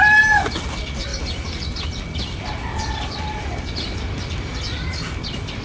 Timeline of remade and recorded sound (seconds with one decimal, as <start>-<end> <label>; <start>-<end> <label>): 0.0-5.6 recorded